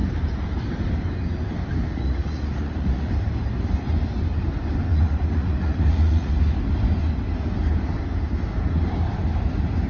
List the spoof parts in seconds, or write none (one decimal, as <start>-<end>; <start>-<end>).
1.9-3.1; 4.9-6.4